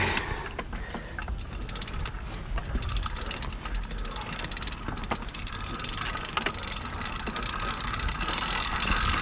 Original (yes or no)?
yes